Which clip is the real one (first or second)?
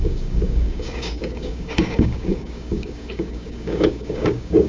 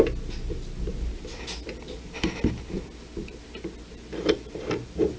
second